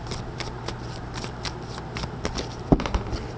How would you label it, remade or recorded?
recorded